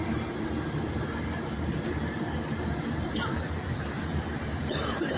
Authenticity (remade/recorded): remade